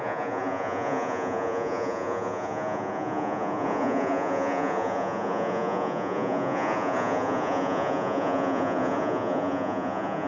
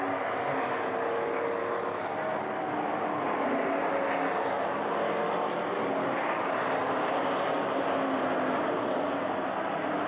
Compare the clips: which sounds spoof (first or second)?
first